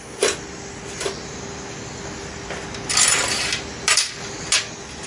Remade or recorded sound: recorded